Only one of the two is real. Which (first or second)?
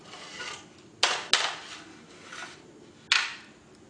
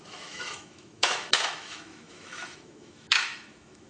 first